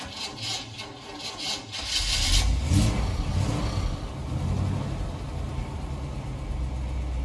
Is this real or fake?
real